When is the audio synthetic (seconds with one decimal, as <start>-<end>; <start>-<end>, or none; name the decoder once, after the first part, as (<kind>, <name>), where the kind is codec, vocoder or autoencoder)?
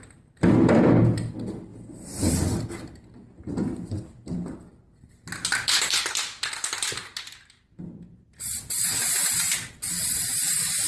0.0-1.7 (vocoder, BigVGAN v2); 2.3-4.7; 7.7-10.9